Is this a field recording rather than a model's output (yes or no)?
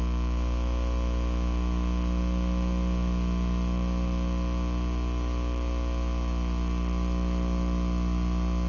yes